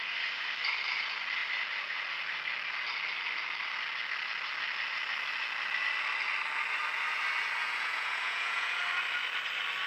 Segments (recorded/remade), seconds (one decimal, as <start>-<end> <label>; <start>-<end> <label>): 0.0-7.6 recorded; 7.6-8.8 remade; 8.8-9.9 recorded